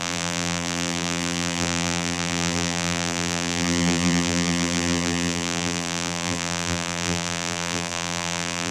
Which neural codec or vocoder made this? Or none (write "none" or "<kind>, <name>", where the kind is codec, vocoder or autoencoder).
vocoder, BigVGAN v2